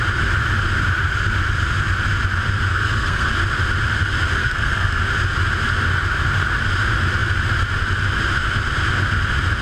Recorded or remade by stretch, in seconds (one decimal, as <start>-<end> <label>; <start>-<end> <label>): 0.0-2.7 recorded; 2.7-3.3 remade; 3.3-4.4 recorded; 4.4-5.0 remade; 5.0-9.6 recorded